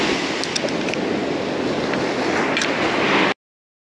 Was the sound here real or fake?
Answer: real